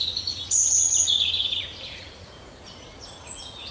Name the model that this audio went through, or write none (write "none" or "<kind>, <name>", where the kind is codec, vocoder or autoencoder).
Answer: vocoder, Vocos